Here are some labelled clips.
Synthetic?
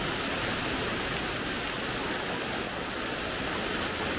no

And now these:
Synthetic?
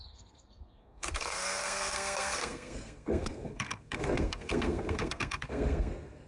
yes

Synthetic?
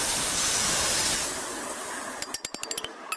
yes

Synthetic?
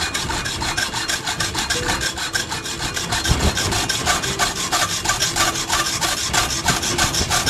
no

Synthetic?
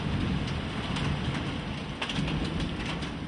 yes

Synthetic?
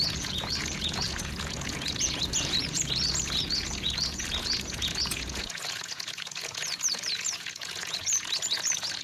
yes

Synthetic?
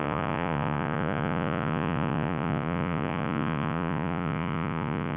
yes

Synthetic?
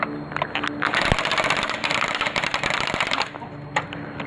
no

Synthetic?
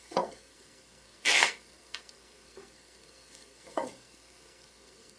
yes